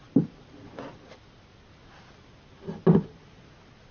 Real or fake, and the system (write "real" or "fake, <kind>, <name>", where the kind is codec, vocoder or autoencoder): real